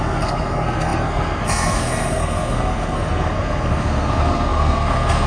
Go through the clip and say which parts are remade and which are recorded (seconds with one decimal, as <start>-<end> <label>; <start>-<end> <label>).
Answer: 0.0-5.3 remade